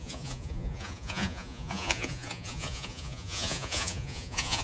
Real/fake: fake